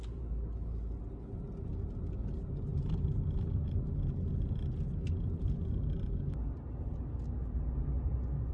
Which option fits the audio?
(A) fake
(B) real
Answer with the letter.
B